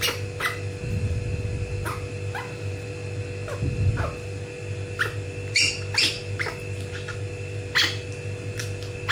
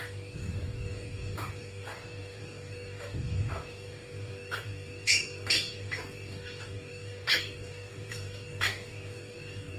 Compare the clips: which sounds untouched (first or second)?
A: first